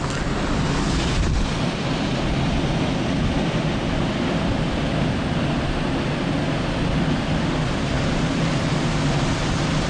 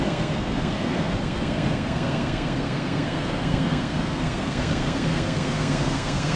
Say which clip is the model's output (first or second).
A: second